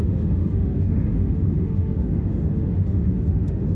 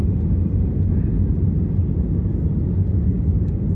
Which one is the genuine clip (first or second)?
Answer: second